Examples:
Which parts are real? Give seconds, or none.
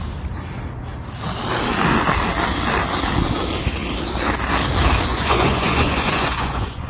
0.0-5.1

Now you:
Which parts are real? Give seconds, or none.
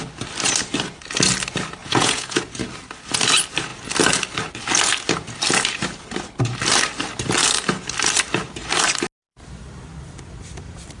0.0-1.8; 2.4-11.0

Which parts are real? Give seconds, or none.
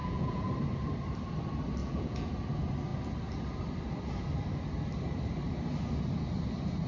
0.5-1.8; 2.3-6.9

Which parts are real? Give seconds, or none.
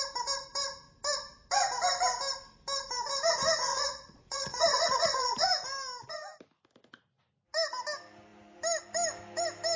0.0-3.7; 5.5-9.8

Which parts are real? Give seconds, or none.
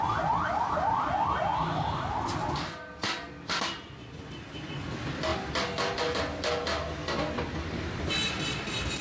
0.0-9.0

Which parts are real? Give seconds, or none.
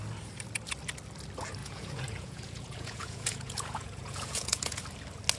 0.0-1.6; 4.8-5.4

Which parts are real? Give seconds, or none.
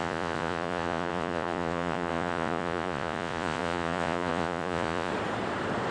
5.1-5.9